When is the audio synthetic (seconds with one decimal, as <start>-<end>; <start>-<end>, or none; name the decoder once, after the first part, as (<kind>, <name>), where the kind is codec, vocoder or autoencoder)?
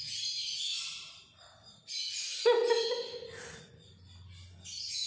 none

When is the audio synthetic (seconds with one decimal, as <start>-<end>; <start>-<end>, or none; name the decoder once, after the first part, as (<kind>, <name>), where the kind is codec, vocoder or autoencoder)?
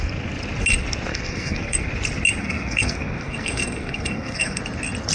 1.1-1.9 (codec, SNAC); 2.4-4.6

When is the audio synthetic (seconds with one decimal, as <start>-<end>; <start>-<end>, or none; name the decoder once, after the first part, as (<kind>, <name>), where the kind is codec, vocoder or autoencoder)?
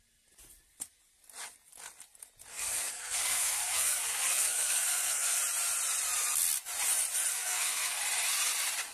2.5-5.4 (codec, SNAC); 7.3-8.0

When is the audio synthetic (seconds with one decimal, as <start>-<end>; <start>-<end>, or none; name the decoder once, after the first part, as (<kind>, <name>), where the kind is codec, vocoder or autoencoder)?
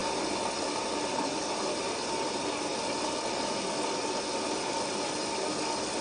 none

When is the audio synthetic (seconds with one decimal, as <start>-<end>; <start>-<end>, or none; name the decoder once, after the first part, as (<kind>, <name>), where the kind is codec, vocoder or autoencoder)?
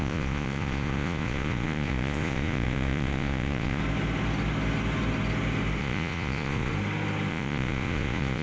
0.0-3.8 (vocoder, Vocos); 5.8-6.7; 7.3-8.4